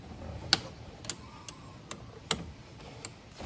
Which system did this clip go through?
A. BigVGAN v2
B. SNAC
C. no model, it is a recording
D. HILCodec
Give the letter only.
C